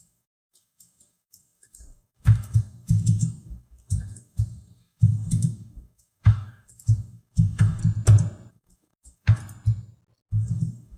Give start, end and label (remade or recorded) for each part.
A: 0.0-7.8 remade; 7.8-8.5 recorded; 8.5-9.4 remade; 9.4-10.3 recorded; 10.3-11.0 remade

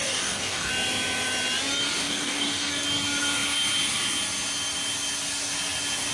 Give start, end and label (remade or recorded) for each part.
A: 0.0-0.7 remade; 0.7-2.0 recorded; 2.0-2.7 remade; 2.7-6.1 recorded